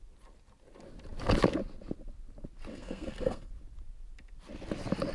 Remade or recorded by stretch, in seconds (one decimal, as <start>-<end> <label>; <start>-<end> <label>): 0.0-2.7 recorded; 2.7-3.5 remade; 3.5-5.1 recorded